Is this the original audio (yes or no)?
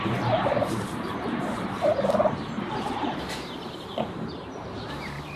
no